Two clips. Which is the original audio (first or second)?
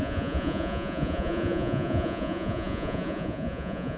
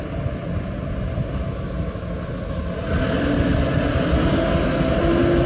second